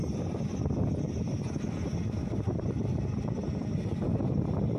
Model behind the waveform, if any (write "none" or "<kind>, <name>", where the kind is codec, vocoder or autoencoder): none